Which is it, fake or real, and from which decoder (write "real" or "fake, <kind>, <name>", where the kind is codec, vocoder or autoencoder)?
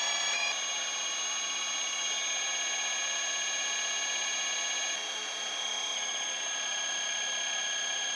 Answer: real